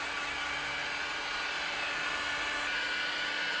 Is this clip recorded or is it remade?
recorded